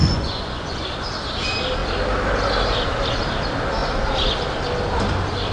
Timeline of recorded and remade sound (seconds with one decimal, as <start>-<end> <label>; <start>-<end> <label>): 0.0-0.9 remade; 0.9-5.5 recorded